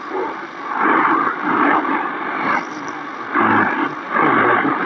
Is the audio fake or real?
real